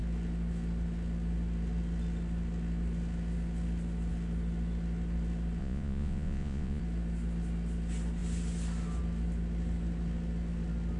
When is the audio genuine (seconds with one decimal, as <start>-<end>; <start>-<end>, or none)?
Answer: 0.0-5.6; 6.8-11.0